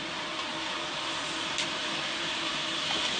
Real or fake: fake